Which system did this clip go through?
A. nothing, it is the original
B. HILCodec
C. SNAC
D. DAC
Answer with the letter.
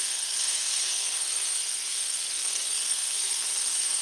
C